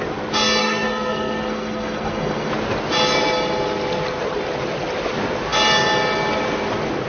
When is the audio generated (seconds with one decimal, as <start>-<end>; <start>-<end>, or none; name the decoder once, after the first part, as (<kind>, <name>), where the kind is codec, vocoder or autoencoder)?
0.6-2.5 (codec, SNAC)

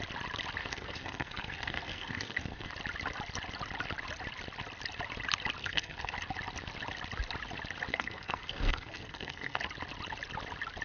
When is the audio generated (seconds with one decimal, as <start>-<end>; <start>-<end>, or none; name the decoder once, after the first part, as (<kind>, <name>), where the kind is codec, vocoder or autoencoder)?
0.6-2.7 (codec, SNAC); 5.6-6.1; 7.9-9.6